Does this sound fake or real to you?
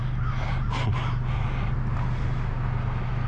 real